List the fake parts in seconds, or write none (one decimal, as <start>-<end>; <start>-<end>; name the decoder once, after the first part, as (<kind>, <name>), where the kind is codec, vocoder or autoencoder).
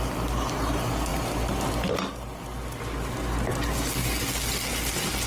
none